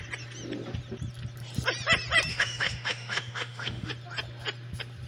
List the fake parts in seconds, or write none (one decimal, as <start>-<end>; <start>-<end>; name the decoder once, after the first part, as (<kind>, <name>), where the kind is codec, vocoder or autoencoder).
2.3-3.9 (autoencoder, DAC-VAE)